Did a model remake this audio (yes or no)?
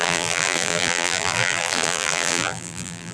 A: yes